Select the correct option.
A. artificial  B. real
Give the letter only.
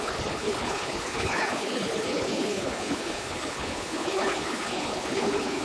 A